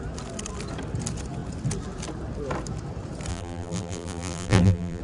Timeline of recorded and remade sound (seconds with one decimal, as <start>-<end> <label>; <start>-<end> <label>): 0.0-3.3 recorded; 3.3-5.0 remade